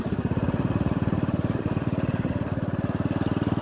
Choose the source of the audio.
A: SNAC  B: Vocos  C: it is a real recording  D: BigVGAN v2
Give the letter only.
C